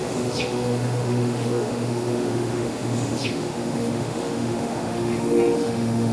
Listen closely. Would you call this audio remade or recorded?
remade